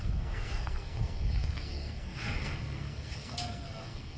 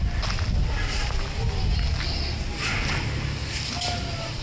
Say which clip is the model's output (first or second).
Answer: first